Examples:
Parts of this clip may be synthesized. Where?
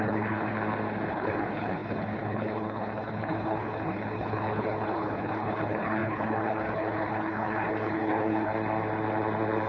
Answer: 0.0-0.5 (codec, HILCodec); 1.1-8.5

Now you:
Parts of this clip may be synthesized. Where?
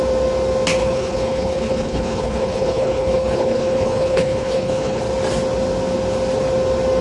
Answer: 0.8-5.0 (codec, HILCodec)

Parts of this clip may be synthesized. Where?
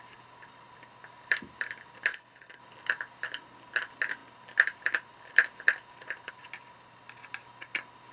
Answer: 2.1-2.6 (codec, HILCodec)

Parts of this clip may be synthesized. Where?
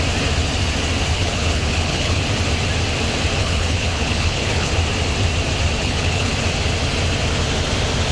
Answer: 1.1-2.2 (codec, HILCodec); 3.4-4.7; 5.8-6.3